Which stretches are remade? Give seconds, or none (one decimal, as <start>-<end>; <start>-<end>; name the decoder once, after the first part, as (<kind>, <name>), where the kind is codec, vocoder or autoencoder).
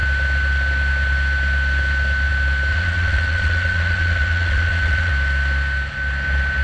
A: 2.7-5.1 (vocoder, Vocos)